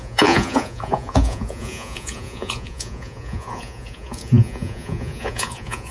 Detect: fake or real fake